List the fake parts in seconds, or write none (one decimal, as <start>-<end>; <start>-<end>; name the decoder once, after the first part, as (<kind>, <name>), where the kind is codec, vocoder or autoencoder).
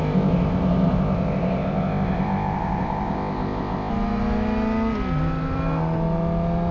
0.0-3.9 (codec, ZipCodec)